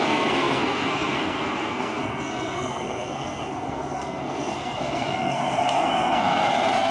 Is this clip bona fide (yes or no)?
no